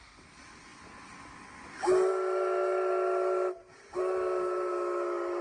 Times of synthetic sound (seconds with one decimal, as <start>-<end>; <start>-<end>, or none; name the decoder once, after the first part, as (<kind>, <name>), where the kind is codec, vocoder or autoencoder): none